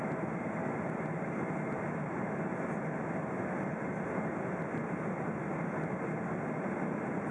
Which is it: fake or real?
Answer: real